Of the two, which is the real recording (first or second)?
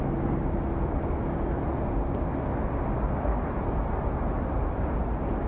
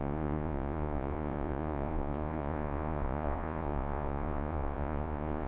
first